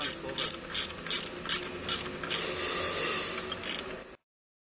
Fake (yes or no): no